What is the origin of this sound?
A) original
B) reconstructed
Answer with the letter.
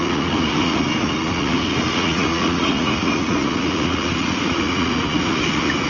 B